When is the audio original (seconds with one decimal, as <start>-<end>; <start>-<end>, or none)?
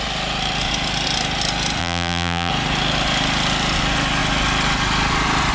0.0-1.8; 2.5-5.5